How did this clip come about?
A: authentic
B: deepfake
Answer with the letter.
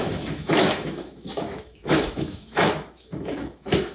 B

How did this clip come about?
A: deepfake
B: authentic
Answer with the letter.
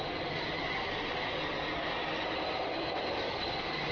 B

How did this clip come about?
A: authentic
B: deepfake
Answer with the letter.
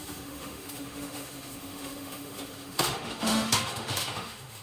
B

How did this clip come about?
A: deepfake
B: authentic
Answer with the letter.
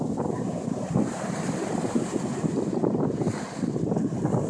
B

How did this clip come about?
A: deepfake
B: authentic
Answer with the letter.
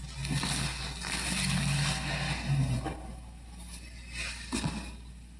B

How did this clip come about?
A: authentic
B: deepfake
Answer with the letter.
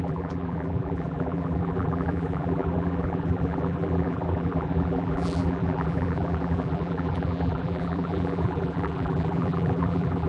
B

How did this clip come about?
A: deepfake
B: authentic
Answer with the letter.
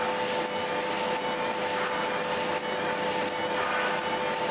B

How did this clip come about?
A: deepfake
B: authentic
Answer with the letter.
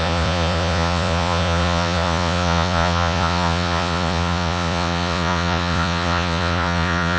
A